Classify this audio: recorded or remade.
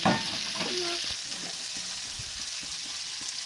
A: recorded